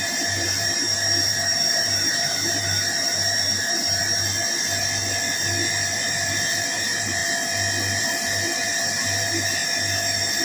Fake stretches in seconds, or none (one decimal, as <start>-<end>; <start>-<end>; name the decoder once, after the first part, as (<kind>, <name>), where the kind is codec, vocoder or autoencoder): 0.0-4.0 (vocoder, BigVGAN v2); 5.7-7.2; 8.0-9.6